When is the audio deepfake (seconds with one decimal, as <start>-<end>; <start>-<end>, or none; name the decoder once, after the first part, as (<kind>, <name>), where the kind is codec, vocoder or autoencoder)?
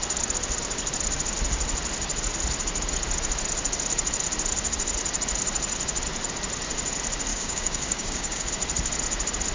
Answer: 7.3-8.5 (codec, DAC)